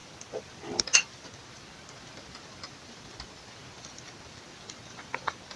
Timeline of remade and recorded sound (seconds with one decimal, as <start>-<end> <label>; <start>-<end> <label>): 0.0-5.6 recorded